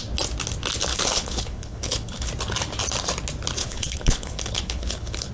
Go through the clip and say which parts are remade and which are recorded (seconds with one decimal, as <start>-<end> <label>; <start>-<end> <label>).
0.0-0.9 recorded; 0.9-2.3 remade; 2.3-3.6 recorded; 3.6-5.3 remade